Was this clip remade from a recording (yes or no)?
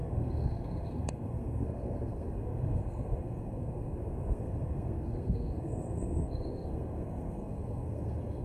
yes